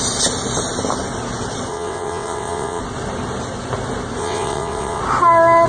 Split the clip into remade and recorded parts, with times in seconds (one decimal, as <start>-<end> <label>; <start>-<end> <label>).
0.0-1.7 recorded; 1.7-2.8 remade; 2.8-4.2 recorded; 4.2-5.0 remade; 5.0-5.7 recorded